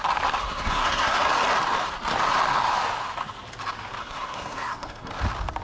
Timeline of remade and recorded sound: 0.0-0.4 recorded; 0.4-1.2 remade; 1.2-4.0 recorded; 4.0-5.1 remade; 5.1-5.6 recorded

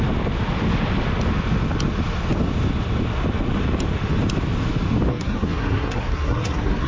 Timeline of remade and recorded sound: 0.0-5.1 recorded; 5.1-6.9 remade